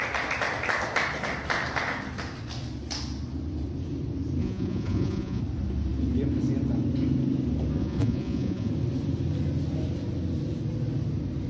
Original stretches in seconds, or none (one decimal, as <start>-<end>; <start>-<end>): 0.0-4.4; 5.4-7.8; 8.7-11.5